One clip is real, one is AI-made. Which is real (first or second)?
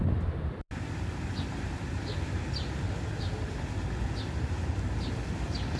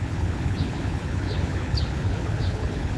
first